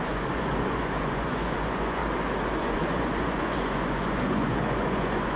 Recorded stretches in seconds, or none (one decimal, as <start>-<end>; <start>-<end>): 2.0-2.6